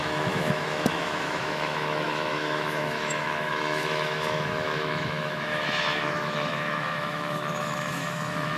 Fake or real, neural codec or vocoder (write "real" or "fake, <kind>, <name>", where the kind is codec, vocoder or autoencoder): fake, autoencoder, DAC-VAE